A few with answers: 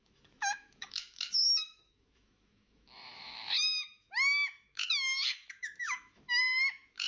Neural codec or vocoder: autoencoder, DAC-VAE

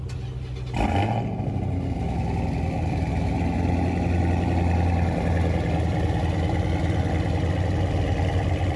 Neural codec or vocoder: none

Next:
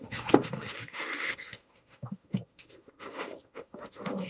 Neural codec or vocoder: autoencoder, DAC-VAE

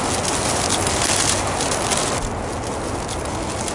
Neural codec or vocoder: none